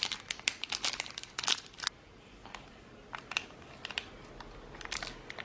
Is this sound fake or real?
real